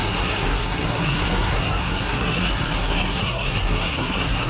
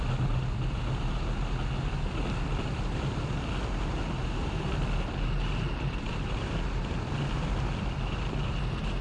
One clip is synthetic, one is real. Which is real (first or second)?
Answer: second